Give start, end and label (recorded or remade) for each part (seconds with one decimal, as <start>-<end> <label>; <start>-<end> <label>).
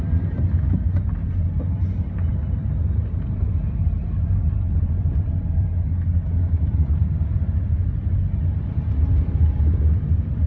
0.0-5.7 remade; 5.7-6.6 recorded; 6.6-10.5 remade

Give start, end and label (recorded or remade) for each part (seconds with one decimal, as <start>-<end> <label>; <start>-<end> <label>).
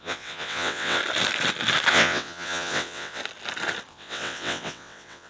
0.0-1.0 remade; 1.0-1.9 recorded; 1.9-3.2 remade; 3.2-3.9 recorded; 3.9-5.3 remade